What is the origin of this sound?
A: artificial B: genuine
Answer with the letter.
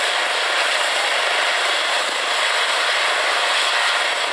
B